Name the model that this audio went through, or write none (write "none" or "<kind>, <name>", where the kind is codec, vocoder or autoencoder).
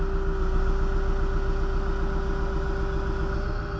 none